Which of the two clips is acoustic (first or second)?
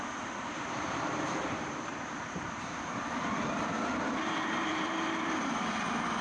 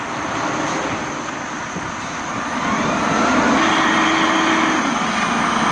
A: second